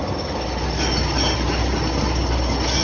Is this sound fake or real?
real